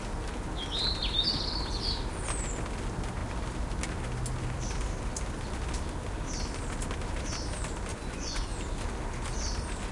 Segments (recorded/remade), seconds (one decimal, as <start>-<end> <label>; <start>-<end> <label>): 0.0-7.9 recorded; 7.9-8.5 remade; 8.5-9.9 recorded